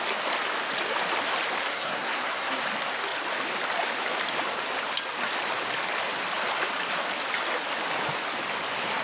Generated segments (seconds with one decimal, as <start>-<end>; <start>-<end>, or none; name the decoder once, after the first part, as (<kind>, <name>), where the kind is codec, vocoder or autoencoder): 1.7-2.6 (codec, SNAC)